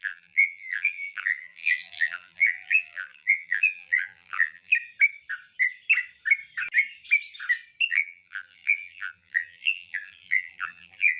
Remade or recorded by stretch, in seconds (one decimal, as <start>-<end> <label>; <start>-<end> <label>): 0.0-4.7 remade; 4.7-7.9 recorded; 7.9-11.2 remade